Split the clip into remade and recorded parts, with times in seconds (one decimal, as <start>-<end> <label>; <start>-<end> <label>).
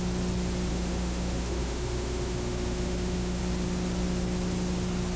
0.0-0.7 recorded; 0.7-3.4 remade; 3.4-5.2 recorded